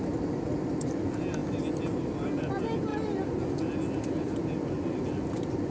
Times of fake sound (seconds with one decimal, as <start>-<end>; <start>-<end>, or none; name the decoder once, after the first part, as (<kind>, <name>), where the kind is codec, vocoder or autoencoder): none